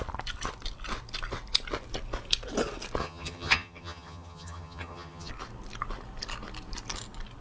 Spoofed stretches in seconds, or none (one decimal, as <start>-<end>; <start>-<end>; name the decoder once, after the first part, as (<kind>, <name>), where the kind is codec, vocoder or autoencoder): 3.0-5.3 (vocoder, HiFi-GAN)